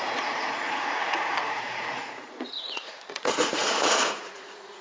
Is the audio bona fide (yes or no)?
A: no